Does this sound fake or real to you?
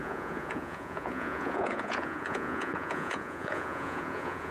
fake